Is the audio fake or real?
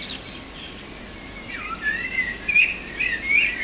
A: real